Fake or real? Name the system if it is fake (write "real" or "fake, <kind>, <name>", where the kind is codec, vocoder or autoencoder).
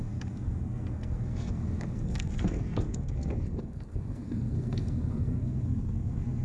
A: fake, codec, SNAC